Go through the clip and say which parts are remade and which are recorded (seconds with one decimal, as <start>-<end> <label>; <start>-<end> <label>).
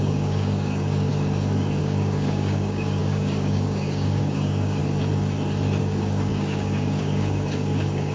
0.0-1.1 remade; 1.1-1.8 recorded; 1.8-4.8 remade; 4.8-5.8 recorded; 5.8-8.1 remade